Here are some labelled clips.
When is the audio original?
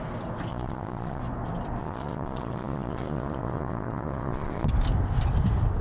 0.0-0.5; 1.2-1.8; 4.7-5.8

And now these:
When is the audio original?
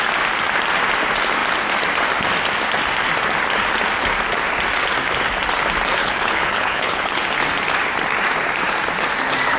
0.0-6.0; 7.2-9.6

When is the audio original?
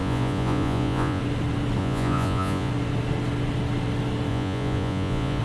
1.2-1.8; 2.7-4.3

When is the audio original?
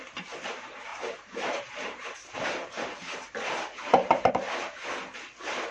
0.0-0.9; 4.3-5.7